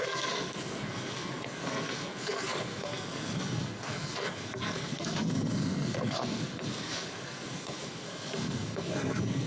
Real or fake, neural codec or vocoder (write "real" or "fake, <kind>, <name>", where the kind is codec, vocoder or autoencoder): fake, codec, SNAC